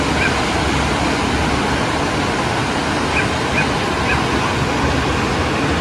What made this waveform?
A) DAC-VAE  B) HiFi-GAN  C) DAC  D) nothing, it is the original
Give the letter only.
D